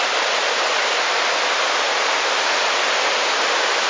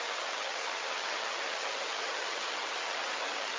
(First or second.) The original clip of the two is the first